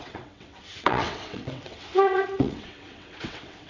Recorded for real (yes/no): no